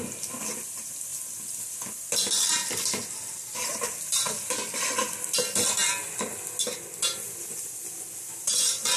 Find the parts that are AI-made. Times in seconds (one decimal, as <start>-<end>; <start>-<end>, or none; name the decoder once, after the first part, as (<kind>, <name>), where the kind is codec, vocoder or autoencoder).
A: none